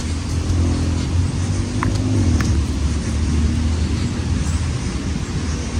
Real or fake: real